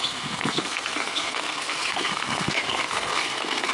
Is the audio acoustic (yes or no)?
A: no